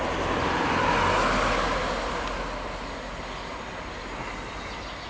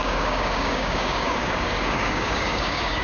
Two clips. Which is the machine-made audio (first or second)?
second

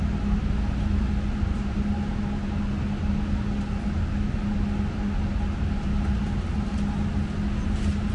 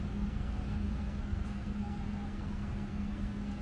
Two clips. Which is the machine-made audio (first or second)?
second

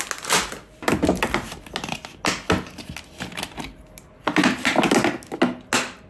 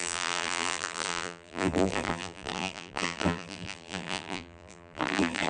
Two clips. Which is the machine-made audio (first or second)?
second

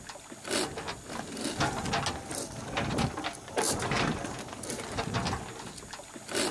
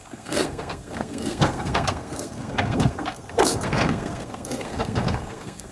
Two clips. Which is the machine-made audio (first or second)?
second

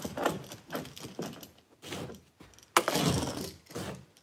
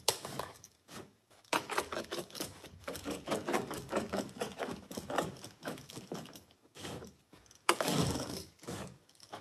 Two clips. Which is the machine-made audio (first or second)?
second